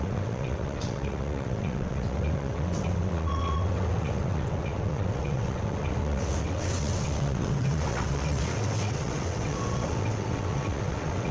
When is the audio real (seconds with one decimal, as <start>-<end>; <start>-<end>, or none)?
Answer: none